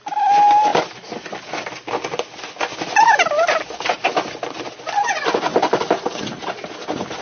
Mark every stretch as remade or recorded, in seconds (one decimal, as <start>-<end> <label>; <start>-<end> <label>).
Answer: 0.0-5.5 recorded; 5.5-6.4 remade; 6.4-7.2 recorded

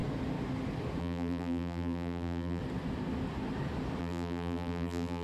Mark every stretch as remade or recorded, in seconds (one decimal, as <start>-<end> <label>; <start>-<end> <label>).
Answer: 0.0-1.0 recorded; 1.0-2.6 remade; 2.6-4.0 recorded; 4.0-5.2 remade

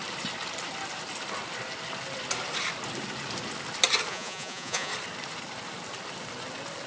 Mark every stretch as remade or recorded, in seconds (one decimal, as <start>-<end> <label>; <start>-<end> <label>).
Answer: 0.0-4.1 recorded; 4.1-4.9 remade; 4.9-6.9 recorded

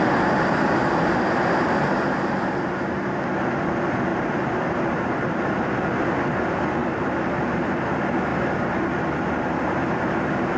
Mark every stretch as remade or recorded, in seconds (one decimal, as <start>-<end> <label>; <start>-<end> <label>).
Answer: 0.0-4.1 recorded; 4.1-5.7 remade; 5.7-6.8 recorded; 6.8-7.6 remade; 7.6-10.6 recorded